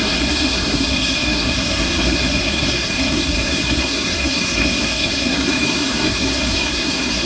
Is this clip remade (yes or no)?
yes